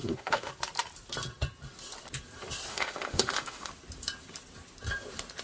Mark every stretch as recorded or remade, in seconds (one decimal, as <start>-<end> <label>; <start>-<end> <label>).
0.0-0.5 remade; 0.5-2.7 recorded; 2.7-3.7 remade; 3.7-5.4 recorded